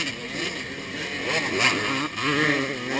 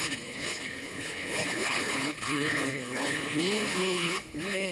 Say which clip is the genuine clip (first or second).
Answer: first